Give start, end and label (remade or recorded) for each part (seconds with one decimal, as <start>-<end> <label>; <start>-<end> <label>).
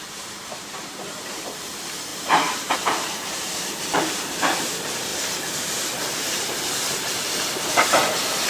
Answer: 0.0-8.5 remade